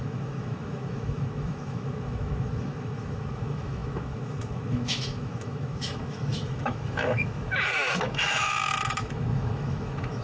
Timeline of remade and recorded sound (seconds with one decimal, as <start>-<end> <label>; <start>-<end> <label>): 0.0-10.2 remade